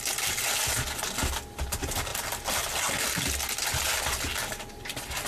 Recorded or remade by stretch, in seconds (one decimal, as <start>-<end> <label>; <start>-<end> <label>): 0.0-5.3 recorded

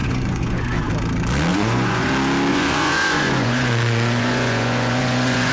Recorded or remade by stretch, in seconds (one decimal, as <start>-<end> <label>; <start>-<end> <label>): 0.0-0.9 remade; 0.9-1.5 recorded; 1.5-2.1 remade; 2.1-2.5 recorded; 2.5-5.5 remade

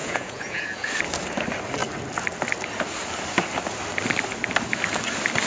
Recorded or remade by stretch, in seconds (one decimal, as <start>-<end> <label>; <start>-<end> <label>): 0.0-0.9 remade; 0.9-5.5 recorded

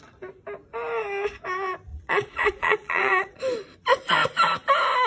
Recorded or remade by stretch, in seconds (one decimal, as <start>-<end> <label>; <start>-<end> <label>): 0.0-1.9 recorded; 1.9-3.4 remade; 3.4-5.1 recorded

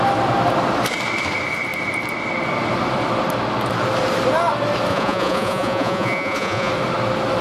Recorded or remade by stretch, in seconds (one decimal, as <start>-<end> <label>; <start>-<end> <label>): 0.0-4.9 recorded; 4.9-6.7 remade; 6.7-7.4 recorded

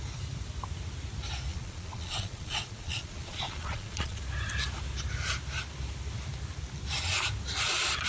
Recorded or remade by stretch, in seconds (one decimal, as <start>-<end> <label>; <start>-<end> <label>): 0.0-1.5 recorded; 1.5-4.2 remade; 4.2-8.1 recorded

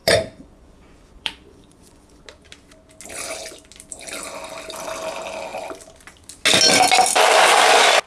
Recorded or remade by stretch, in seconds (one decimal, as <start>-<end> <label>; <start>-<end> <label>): 0.0-2.2 remade; 2.2-8.1 recorded

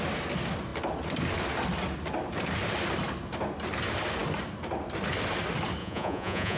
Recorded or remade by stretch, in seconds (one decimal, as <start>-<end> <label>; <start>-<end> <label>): 0.0-5.8 recorded; 5.8-6.6 remade